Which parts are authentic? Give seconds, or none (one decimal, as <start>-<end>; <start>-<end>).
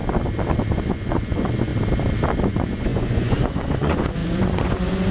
0.0-0.7; 1.7-2.4